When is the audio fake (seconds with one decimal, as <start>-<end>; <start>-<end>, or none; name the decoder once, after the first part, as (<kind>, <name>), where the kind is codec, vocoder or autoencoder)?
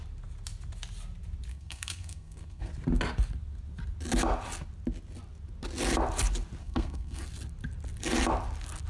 1.5-2.7 (codec, SNAC); 6.6-7.2